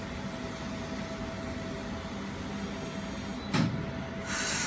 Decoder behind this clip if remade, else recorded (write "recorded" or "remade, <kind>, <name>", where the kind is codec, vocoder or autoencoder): recorded